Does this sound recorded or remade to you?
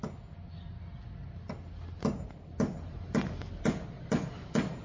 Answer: recorded